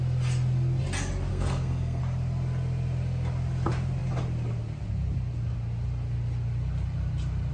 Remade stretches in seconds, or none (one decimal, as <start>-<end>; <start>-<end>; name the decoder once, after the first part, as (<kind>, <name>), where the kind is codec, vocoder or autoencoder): 1.3-2.0 (codec, SNAC)